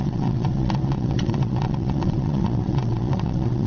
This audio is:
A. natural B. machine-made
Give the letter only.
B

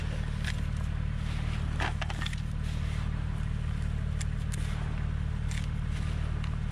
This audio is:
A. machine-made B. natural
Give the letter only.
B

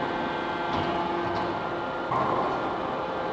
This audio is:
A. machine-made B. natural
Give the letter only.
B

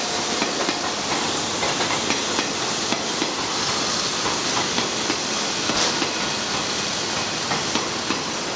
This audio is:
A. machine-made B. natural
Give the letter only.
B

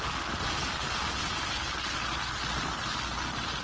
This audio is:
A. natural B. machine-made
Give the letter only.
A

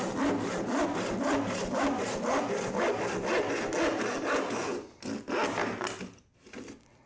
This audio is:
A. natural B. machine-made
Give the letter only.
A